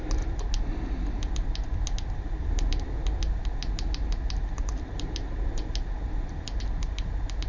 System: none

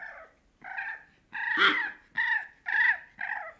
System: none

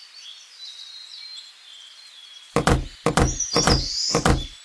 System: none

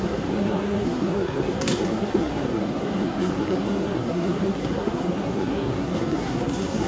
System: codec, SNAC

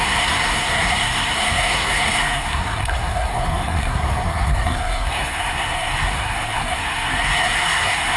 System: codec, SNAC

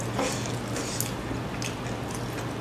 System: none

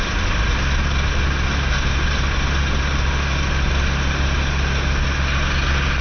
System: none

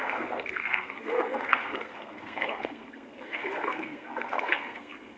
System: codec, SNAC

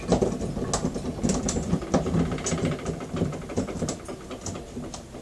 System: none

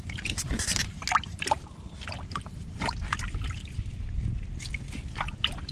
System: none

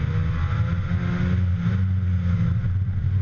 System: none